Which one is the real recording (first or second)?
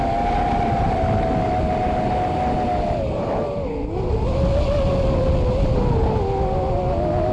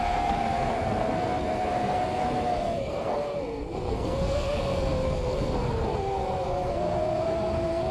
first